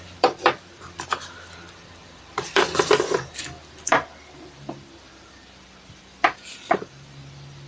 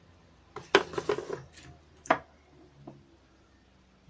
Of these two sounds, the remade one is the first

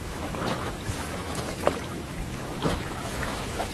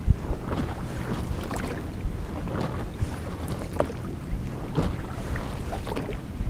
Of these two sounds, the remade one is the first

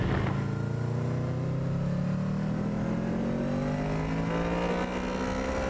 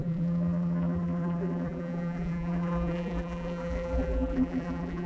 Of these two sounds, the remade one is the second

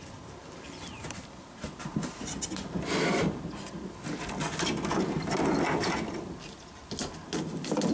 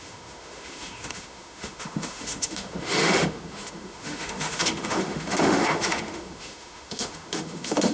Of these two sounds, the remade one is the second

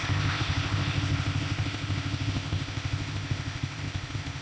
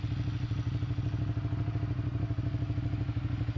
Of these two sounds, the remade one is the first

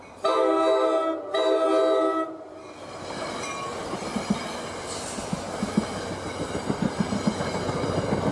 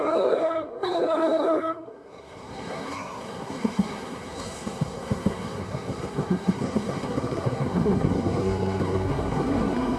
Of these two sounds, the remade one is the second